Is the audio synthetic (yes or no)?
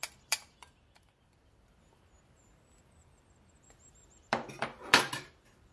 yes